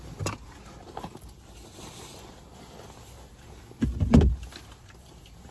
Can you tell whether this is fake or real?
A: real